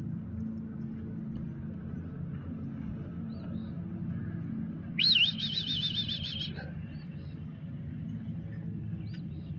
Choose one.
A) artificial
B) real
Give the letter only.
B